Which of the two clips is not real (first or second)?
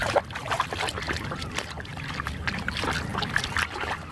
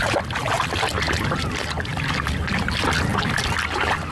first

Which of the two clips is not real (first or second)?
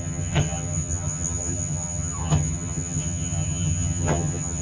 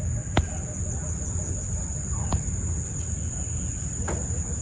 first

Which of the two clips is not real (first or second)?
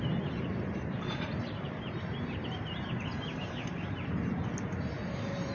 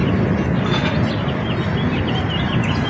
first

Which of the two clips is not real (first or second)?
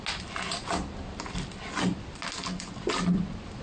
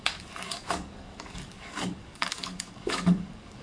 second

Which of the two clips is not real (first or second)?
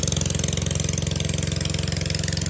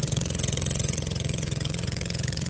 second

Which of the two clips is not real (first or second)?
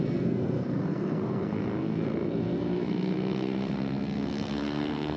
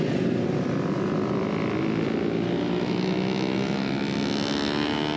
first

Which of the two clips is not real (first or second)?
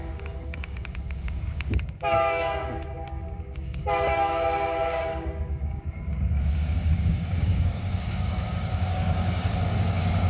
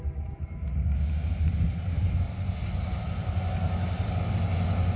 first